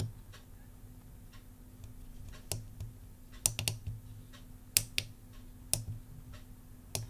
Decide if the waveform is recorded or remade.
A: recorded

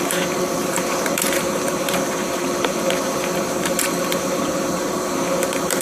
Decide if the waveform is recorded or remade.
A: remade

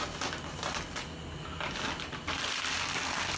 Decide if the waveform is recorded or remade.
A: recorded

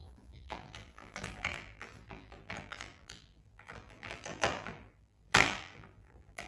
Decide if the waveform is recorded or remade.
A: remade